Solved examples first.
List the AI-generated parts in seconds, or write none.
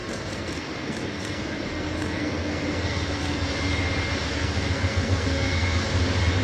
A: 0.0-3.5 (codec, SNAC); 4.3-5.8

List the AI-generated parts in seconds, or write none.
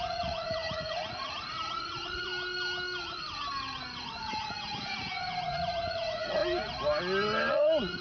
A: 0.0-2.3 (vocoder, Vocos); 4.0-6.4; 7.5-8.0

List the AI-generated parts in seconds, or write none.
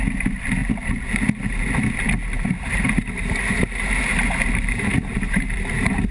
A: 2.3-6.1 (vocoder, BigVGAN v2)